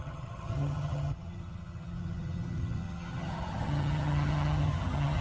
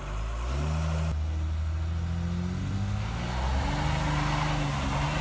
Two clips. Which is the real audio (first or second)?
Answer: second